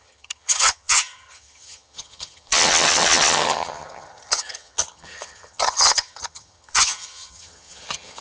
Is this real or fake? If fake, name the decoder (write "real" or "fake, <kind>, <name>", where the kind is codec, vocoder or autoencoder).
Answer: fake, vocoder, HiFi-GAN